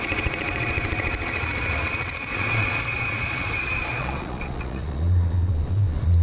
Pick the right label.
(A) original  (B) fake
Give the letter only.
B